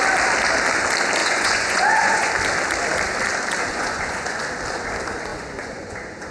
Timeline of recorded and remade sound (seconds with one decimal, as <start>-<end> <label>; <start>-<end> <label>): 0.0-1.2 recorded; 1.2-2.3 remade; 2.3-3.7 recorded; 3.7-4.4 remade; 4.4-5.3 recorded; 5.3-6.3 remade